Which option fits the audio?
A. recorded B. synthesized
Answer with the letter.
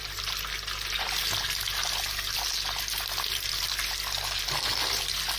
A